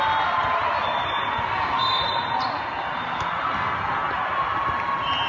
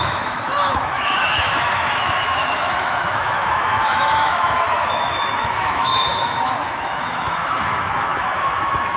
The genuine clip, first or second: first